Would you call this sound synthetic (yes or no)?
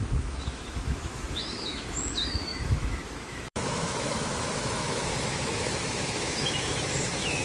yes